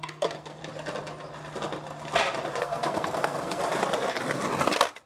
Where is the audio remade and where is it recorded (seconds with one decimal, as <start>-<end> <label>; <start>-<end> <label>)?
0.0-0.6 remade; 0.6-2.6 recorded; 2.6-3.6 remade; 3.6-5.1 recorded